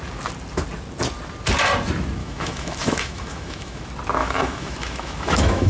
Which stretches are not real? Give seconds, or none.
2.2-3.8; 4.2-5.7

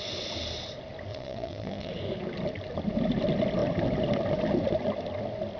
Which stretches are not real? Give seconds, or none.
1.1-1.9

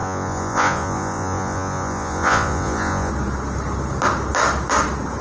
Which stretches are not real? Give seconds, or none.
0.0-3.1